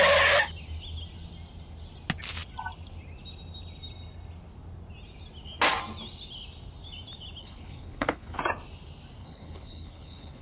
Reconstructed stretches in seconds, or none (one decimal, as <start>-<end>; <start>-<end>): 7.4-8.4; 9.2-10.4